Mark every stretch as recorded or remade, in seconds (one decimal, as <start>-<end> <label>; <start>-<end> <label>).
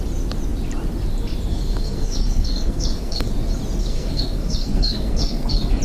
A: 0.0-1.5 recorded; 1.5-3.3 remade; 3.3-3.8 recorded; 3.8-5.8 remade